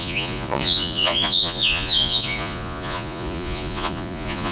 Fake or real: fake